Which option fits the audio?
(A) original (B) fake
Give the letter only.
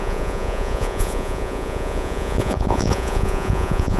B